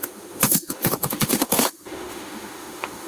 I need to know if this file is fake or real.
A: fake